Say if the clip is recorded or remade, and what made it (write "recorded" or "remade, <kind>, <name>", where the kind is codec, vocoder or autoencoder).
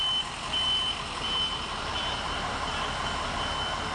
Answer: recorded